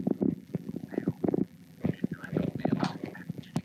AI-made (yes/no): yes